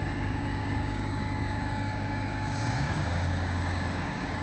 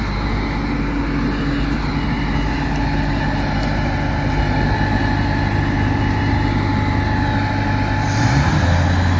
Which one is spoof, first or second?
first